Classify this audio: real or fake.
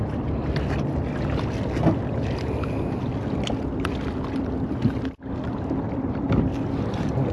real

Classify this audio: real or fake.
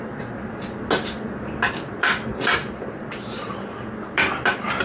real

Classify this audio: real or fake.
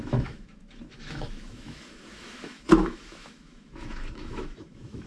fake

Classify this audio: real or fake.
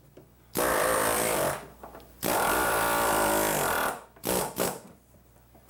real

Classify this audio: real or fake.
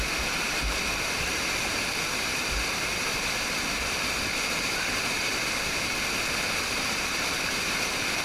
real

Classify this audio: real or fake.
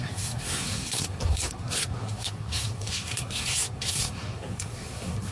fake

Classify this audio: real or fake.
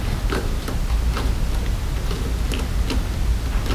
real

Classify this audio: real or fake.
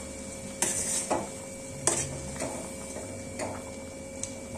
real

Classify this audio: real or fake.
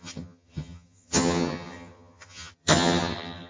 fake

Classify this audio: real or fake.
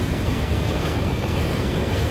fake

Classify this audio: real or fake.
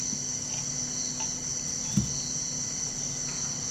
real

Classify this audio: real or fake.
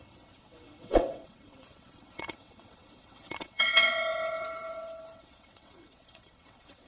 fake